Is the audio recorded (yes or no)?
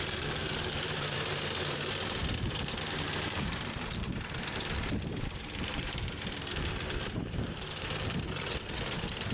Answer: no